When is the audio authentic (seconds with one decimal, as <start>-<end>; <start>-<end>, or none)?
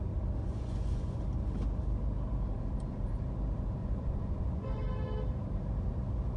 0.0-0.4; 1.2-3.8; 4.8-6.4